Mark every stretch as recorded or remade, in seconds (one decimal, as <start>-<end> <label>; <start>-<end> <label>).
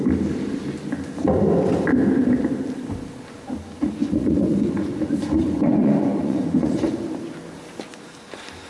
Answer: 0.0-4.0 recorded; 4.0-6.9 remade; 6.9-8.7 recorded